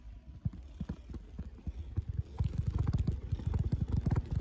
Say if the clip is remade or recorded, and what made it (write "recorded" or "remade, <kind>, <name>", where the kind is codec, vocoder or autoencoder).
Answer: recorded